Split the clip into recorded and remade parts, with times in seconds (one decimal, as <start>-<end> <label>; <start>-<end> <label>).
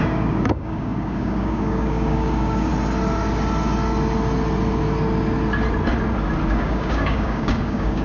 0.0-2.7 remade; 2.7-6.5 recorded; 6.5-8.0 remade